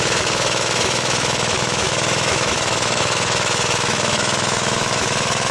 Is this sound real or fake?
fake